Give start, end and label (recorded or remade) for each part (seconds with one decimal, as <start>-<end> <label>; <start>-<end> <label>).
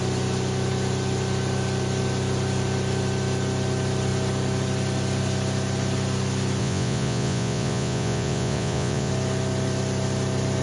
0.0-6.6 recorded; 6.6-9.1 remade; 9.1-10.6 recorded